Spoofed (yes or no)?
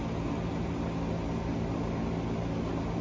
no